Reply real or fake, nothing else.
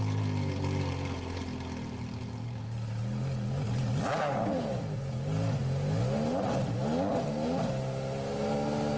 real